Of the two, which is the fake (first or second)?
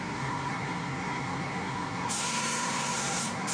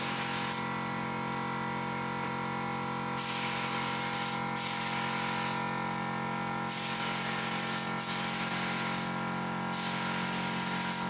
first